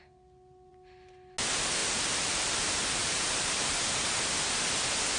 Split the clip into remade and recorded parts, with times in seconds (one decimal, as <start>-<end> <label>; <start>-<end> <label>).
0.0-1.8 recorded; 1.8-2.5 remade; 2.5-3.0 recorded; 3.0-4.0 remade; 4.0-5.2 recorded